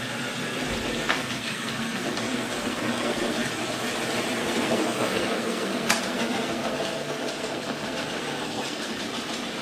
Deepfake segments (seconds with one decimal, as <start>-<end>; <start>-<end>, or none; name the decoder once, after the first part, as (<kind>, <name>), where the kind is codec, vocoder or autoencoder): 1.1-3.5 (codec, SNAC); 4.4-9.0